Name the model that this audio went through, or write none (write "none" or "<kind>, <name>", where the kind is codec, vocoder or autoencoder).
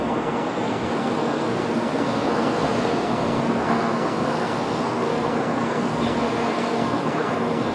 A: codec, SNAC